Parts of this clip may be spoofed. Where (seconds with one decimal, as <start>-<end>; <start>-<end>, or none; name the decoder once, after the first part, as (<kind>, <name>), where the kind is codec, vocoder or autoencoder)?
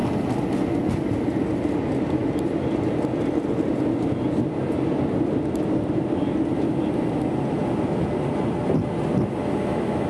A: none